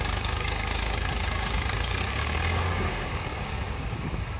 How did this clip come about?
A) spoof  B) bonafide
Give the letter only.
A